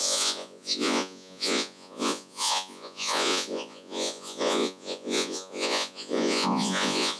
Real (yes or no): no